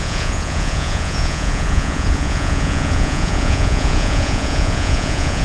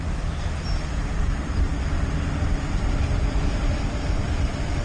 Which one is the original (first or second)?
second